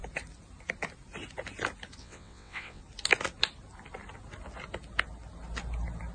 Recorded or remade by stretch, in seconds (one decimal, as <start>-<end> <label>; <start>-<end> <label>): 0.0-2.0 recorded; 2.0-2.8 remade; 2.8-6.1 recorded